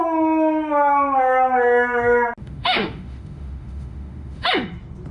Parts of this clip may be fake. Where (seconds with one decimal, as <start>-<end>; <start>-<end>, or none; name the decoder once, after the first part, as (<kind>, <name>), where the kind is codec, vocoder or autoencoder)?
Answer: 2.4-4.5 (autoencoder, DAC-VAE)